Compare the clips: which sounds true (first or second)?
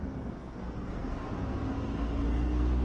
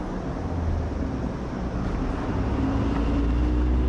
second